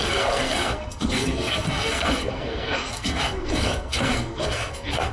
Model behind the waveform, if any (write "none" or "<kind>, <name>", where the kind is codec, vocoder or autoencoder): codec, SNAC